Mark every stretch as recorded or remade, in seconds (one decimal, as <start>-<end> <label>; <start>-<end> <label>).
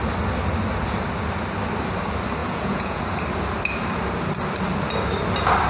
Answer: 0.0-2.4 recorded; 2.4-3.0 remade; 3.0-5.7 recorded